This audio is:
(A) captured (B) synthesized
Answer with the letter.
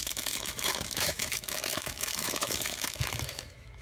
B